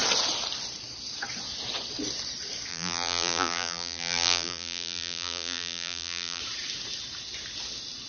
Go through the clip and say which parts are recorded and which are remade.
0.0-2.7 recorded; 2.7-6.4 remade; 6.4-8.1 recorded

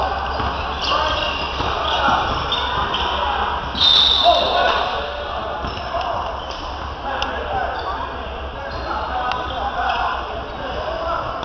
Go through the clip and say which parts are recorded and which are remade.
0.0-11.4 recorded

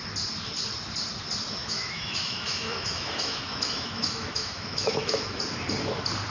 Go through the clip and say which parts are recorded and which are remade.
0.0-1.6 recorded; 1.6-5.4 remade; 5.4-6.3 recorded

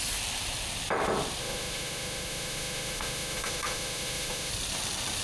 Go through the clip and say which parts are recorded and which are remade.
0.0-1.4 recorded; 1.4-4.5 remade; 4.5-5.2 recorded